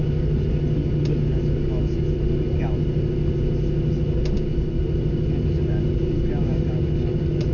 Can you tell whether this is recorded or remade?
recorded